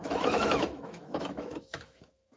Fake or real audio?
fake